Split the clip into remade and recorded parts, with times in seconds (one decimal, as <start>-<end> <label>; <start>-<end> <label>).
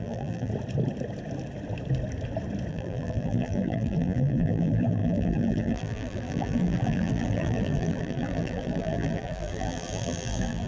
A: 0.0-0.5 remade; 0.5-2.7 recorded; 2.7-10.7 remade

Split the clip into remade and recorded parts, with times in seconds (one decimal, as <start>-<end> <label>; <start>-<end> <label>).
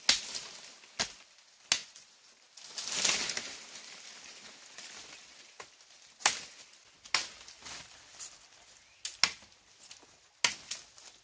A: 0.0-1.8 recorded; 1.8-2.4 remade; 2.4-11.2 recorded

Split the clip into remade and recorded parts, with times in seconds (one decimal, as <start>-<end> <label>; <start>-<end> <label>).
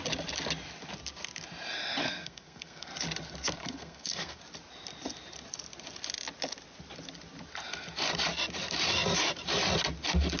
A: 0.0-2.0 recorded; 2.0-2.9 remade; 2.9-3.6 recorded; 3.6-4.4 remade; 4.4-10.4 recorded